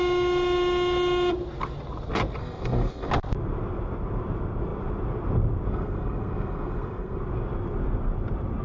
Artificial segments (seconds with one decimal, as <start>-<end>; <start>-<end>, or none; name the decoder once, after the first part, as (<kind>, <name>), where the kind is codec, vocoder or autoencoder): 2.4-3.1 (codec, SNAC); 5.7-7.2